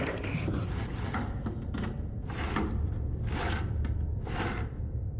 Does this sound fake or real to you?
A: real